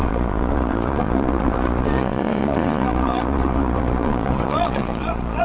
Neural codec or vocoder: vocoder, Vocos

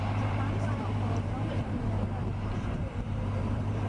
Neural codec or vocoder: vocoder, BigVGAN v2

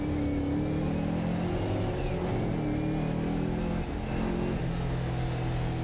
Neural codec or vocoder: none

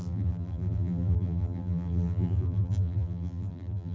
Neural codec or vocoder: vocoder, BigVGAN v2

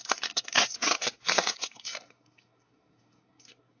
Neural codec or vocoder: codec, SNAC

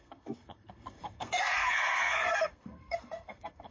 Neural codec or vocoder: codec, SNAC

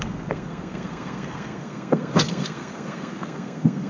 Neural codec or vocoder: codec, SNAC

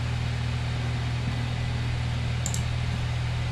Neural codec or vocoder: none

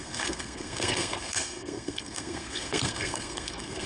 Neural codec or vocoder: codec, SNAC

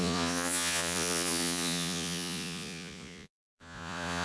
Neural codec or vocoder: vocoder, Vocos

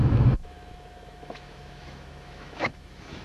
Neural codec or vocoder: autoencoder, DAC-VAE